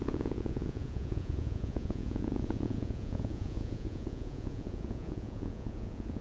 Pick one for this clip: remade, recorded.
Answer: remade